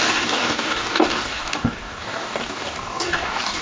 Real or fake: fake